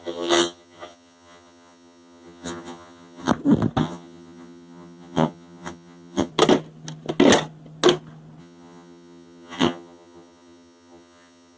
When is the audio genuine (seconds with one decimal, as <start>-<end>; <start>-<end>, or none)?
3.3-3.8; 6.3-8.4